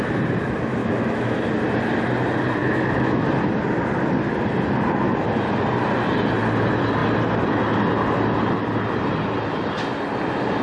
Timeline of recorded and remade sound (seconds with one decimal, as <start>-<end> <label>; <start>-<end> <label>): 0.0-0.8 recorded; 0.8-1.4 remade; 1.4-2.6 recorded; 2.6-3.2 remade; 3.2-10.6 recorded